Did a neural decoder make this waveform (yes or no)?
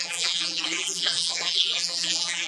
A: yes